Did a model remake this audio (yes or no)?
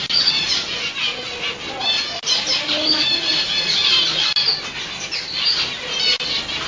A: no